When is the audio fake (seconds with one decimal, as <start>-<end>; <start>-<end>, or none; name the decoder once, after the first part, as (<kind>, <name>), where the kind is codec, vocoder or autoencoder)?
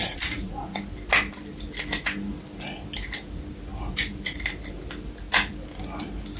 0.0-0.8 (vocoder, Vocos)